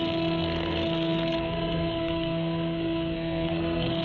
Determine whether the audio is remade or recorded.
remade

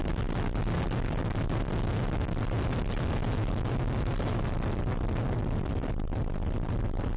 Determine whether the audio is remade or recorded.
remade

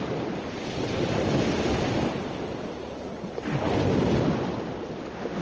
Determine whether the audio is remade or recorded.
recorded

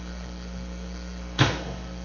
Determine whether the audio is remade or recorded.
remade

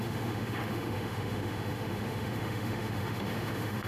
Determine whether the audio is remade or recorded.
remade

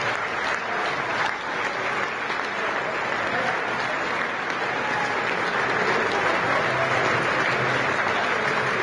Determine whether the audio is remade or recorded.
recorded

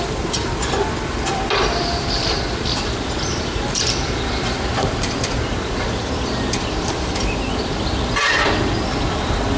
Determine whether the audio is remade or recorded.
remade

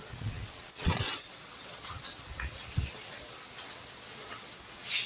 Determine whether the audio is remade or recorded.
remade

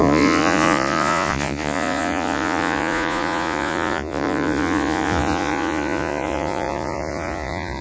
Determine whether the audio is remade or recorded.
remade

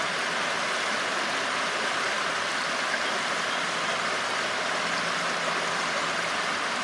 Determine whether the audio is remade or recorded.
recorded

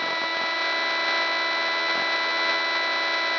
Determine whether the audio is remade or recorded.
recorded